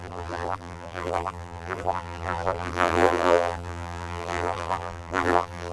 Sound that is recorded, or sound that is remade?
remade